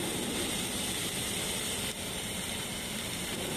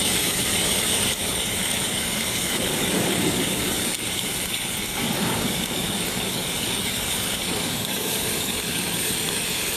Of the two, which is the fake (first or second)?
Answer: second